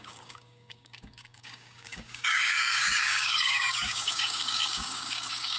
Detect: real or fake fake